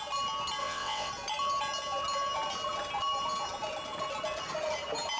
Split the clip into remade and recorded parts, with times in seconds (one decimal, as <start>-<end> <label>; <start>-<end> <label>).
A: 0.0-0.6 recorded; 0.6-1.1 remade; 1.1-5.2 recorded